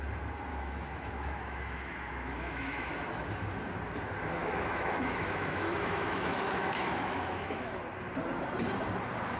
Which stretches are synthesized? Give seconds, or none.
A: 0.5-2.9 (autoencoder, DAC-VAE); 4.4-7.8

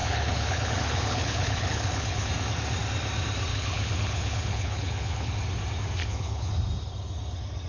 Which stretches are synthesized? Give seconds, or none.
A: 0.0-2.3 (codec, HILCodec); 3.5-5.3; 6.0-6.5

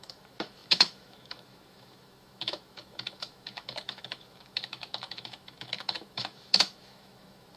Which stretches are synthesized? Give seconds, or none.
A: 0.0-7.6 (autoencoder, DAC-VAE)